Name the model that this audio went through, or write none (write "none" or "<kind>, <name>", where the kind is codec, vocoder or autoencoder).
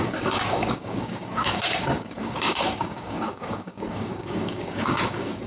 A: codec, DAC